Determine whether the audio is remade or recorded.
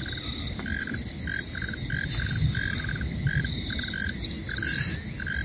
recorded